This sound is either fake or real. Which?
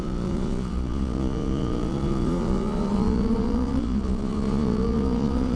fake